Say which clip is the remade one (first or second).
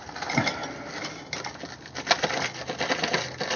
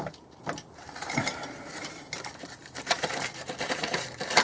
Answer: second